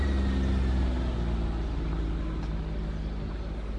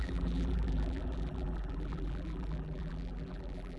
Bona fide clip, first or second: first